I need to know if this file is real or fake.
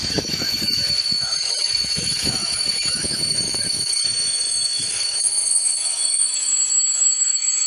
fake